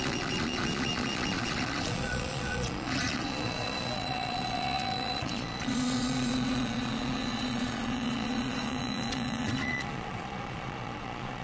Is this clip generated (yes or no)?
yes